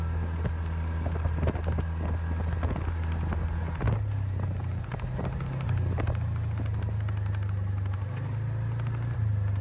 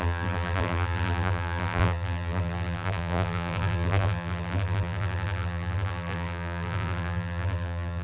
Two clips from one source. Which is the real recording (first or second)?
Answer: first